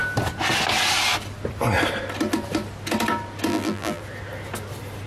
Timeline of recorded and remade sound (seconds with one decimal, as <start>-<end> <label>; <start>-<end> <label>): 0.0-3.5 recorded; 3.5-4.0 remade; 4.0-5.1 recorded